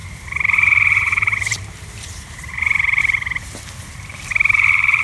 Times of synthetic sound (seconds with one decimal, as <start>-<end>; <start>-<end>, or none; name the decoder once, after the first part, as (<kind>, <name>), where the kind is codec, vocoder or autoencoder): 0.0-5.0 (vocoder, BigVGAN v2)